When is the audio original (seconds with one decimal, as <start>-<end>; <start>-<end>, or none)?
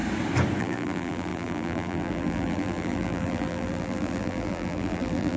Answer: 0.0-0.6